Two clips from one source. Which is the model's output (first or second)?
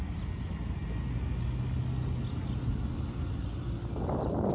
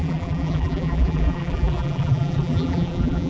second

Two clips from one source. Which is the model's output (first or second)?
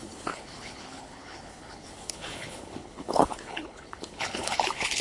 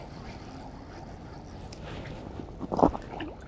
first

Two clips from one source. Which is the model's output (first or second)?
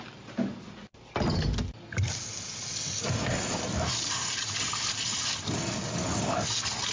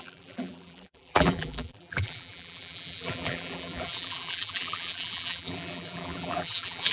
second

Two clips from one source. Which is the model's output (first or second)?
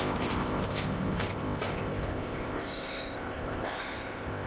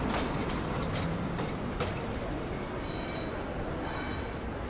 first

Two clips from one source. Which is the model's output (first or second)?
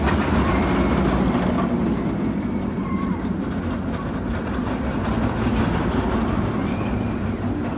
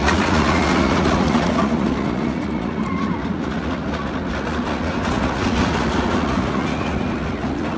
second